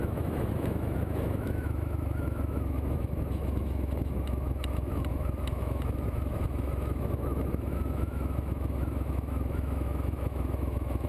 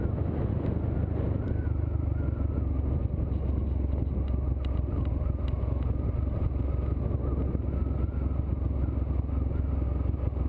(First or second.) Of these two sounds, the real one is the second